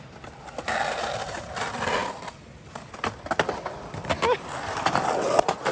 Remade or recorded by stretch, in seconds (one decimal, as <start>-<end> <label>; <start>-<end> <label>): 0.0-5.7 recorded